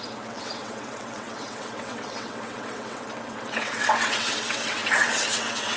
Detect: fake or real fake